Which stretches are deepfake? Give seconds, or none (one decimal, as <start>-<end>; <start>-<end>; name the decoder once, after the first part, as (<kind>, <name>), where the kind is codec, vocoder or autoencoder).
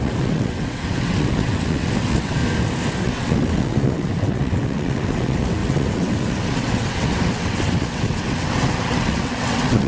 0.0-2.4 (vocoder, WaveNeXt); 3.0-9.9